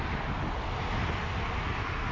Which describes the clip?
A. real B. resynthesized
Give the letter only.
A